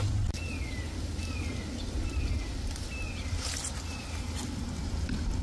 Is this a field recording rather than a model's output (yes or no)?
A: yes